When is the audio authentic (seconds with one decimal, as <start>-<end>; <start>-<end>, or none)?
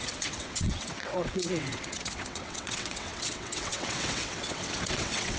none